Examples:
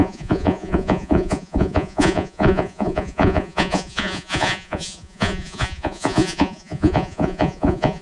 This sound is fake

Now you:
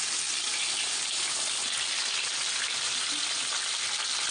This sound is real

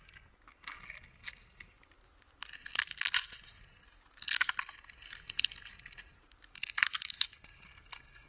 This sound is real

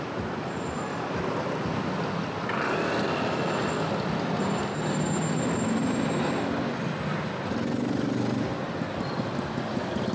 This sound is real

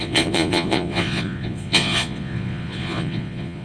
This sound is fake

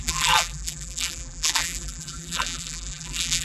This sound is fake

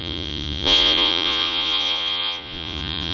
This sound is fake